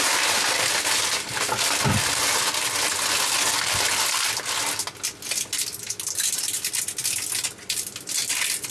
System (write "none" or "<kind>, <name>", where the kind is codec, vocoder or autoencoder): none